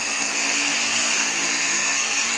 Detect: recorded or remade remade